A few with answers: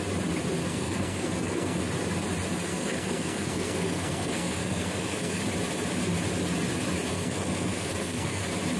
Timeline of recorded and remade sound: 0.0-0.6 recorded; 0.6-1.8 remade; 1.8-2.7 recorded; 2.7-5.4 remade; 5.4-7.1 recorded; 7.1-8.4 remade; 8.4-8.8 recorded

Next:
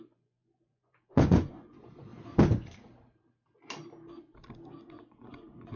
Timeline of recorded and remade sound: 0.0-2.1 remade; 2.1-4.9 recorded; 4.9-5.8 remade

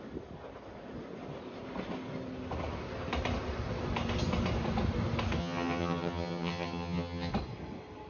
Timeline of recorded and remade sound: 0.0-5.4 recorded; 5.4-7.3 remade; 7.3-8.1 recorded

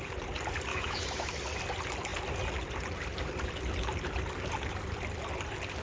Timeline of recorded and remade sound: 0.0-0.7 recorded; 0.7-1.3 remade; 1.3-5.8 recorded